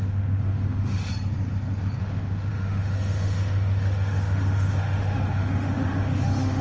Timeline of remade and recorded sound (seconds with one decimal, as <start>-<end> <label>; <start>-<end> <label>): 0.0-1.1 remade; 1.1-2.0 recorded; 2.0-6.6 remade